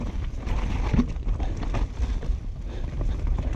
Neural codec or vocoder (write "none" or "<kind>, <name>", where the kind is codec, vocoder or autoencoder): vocoder, BigVGAN v2